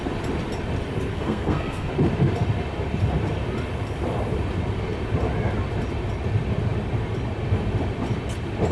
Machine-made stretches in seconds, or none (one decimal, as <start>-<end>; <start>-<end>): 1.1-1.9